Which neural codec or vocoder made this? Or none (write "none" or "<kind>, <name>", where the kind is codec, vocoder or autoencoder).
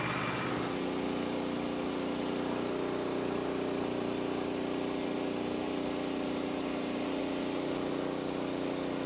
none